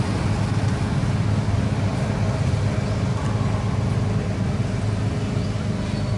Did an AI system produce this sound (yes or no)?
no